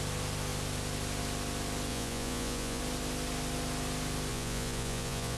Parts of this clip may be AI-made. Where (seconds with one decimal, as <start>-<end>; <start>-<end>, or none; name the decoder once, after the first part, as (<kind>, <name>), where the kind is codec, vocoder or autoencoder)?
1.9-2.8 (vocoder, Vocos); 4.3-5.4